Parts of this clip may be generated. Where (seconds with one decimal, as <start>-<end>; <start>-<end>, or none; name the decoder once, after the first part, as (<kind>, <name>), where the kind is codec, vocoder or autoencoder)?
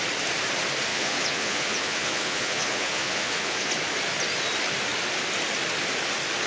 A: 0.9-3.7 (vocoder, Vocos)